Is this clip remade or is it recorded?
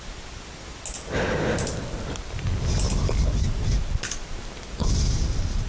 recorded